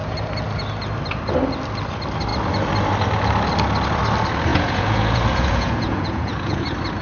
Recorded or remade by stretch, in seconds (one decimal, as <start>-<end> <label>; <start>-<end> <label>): 0.0-4.5 recorded; 4.5-6.6 remade; 6.6-7.0 recorded